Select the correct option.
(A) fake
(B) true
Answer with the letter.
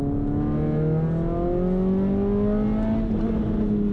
B